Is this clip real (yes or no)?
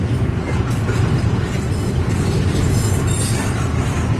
yes